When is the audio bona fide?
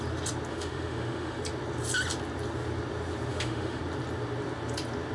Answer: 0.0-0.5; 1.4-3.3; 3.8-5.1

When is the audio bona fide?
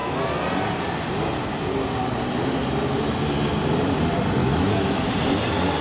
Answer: 0.0-4.4; 5.1-5.8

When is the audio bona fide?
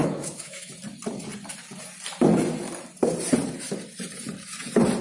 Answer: 0.7-5.0